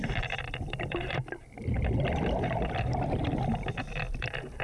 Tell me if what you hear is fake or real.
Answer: real